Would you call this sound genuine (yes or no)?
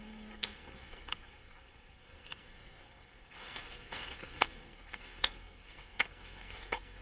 no